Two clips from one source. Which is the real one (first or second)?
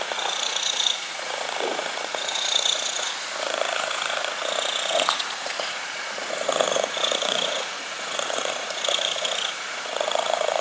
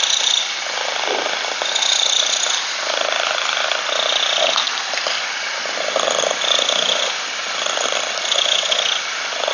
second